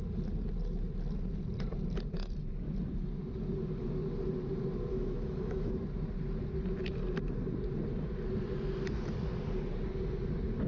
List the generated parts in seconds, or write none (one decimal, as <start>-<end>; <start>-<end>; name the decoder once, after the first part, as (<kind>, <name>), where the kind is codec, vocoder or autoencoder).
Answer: 4.9-5.7 (autoencoder, DAC-VAE)